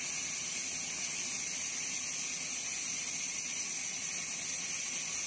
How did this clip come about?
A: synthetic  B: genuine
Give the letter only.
B